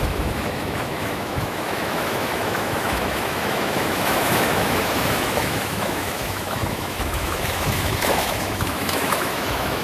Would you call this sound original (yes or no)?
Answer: no